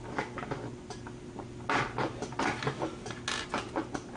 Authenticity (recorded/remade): recorded